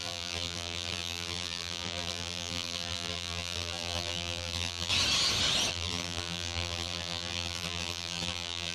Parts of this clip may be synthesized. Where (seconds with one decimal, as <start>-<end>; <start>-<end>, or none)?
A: 0.0-4.9; 5.7-8.7